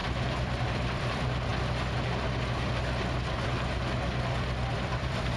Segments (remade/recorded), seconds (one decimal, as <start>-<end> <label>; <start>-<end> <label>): 0.0-1.5 remade; 1.5-4.7 recorded; 4.7-5.4 remade